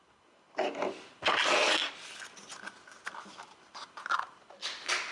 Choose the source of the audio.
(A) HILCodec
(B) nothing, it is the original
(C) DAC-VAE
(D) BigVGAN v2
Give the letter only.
B